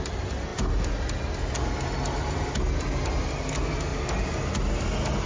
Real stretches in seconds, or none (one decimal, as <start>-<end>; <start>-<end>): 0.0-5.3